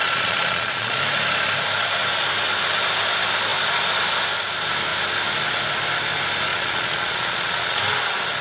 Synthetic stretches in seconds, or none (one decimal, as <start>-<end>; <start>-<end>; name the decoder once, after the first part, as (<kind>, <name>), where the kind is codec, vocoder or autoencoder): 0.0-1.0 (vocoder, Vocos); 6.5-7.8